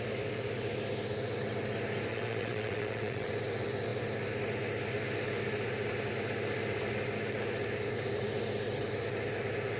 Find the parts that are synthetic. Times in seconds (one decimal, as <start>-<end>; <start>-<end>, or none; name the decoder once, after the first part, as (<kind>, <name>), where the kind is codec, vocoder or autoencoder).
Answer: 2.1-3.3 (vocoder, WaveNeXt)